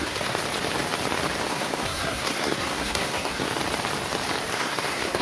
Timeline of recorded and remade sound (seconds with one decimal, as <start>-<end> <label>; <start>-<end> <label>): 0.0-0.4 remade; 0.4-1.5 recorded; 1.5-3.5 remade; 3.5-4.5 recorded; 4.5-5.2 remade